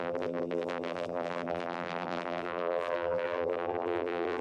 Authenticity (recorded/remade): remade